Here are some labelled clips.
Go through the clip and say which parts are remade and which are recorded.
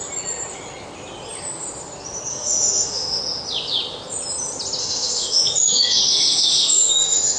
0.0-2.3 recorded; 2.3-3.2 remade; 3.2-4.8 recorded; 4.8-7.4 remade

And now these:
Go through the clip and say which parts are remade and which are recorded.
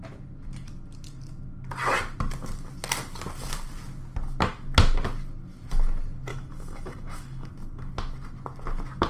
0.0-6.3 recorded; 6.3-7.5 remade; 7.5-9.1 recorded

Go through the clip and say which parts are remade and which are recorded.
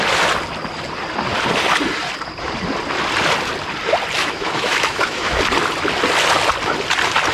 0.0-4.2 recorded; 4.2-5.4 remade; 5.4-7.3 recorded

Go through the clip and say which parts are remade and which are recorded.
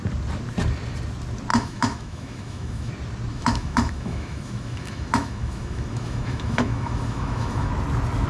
0.0-1.5 recorded; 1.5-2.9 remade; 2.9-3.3 recorded; 3.3-7.7 remade; 7.7-8.3 recorded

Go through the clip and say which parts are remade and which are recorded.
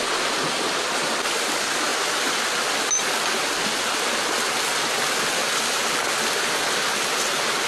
0.0-7.7 recorded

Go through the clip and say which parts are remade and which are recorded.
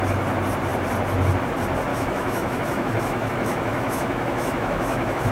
0.0-1.9 recorded; 1.9-5.3 remade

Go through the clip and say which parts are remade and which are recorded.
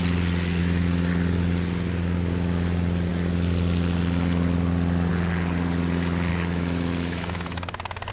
0.0-0.6 recorded; 0.6-1.1 remade; 1.1-6.3 recorded; 6.3-8.1 remade